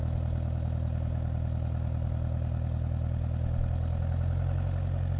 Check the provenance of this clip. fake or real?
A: real